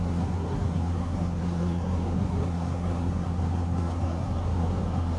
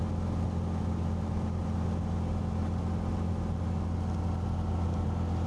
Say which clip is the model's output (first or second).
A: first